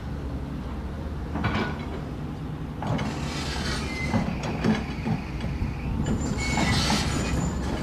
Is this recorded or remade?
recorded